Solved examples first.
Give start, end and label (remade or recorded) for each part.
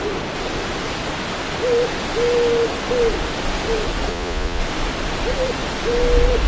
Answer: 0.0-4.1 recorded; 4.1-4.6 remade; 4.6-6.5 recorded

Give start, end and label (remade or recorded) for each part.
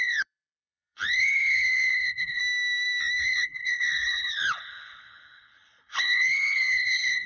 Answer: 0.0-2.4 remade; 2.4-3.2 recorded; 3.2-7.3 remade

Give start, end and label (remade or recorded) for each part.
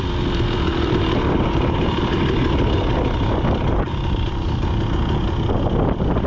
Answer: 0.0-0.7 recorded; 0.7-2.0 remade; 2.0-6.3 recorded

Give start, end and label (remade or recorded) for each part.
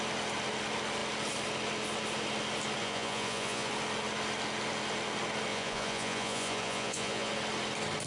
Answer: 0.0-2.8 recorded; 2.8-3.7 remade; 3.7-5.5 recorded; 5.5-7.3 remade; 7.3-8.1 recorded